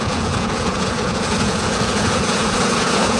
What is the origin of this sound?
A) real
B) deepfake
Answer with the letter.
B